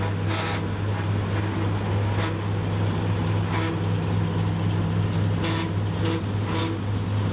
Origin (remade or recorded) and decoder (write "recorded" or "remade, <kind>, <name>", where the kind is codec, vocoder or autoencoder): recorded